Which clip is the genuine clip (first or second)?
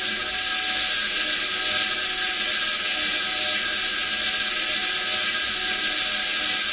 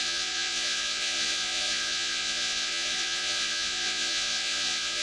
first